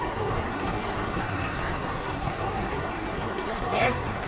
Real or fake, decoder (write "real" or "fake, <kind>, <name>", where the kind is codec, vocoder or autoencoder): fake, codec, SNAC